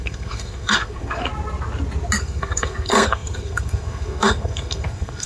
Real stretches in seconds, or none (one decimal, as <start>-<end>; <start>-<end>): 1.2-2.2